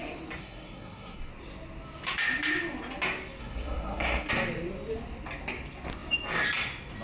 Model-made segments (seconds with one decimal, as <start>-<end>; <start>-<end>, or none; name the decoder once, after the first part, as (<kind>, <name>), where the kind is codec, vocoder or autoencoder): 0.4-1.3 (codec, SNAC); 3.4-4.3